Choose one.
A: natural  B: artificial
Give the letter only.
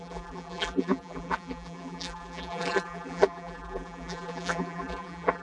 B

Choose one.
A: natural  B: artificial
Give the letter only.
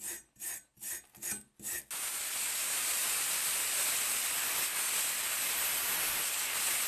A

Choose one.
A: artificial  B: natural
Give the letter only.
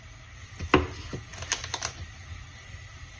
B